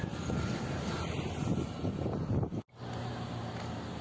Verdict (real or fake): real